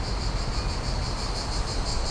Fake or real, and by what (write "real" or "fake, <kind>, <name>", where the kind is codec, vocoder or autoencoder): real